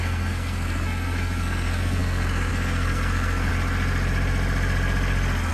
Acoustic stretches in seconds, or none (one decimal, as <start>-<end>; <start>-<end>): 3.5-5.5